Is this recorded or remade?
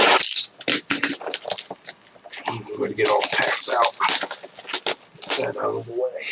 recorded